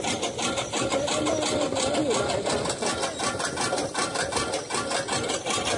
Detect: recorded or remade recorded